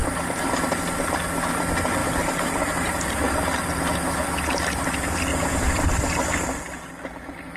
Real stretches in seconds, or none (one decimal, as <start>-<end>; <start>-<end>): 0.0-5.3; 5.8-7.6